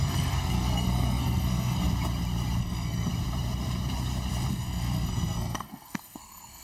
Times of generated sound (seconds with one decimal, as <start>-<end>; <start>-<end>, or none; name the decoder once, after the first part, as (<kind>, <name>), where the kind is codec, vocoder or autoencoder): 0.0-1.8 (codec, SNAC); 2.6-3.1; 4.5-6.6